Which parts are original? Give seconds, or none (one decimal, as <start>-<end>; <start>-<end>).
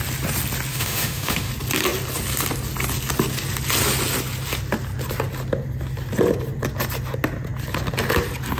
0.0-0.7; 1.5-8.6